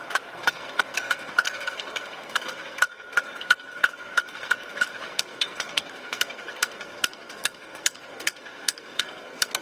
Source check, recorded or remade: remade